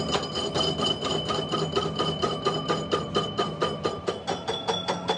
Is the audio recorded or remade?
recorded